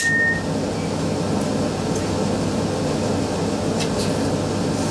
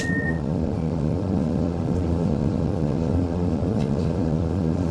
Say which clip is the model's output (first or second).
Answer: second